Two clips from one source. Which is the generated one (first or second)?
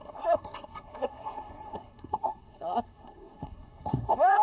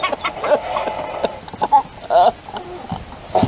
first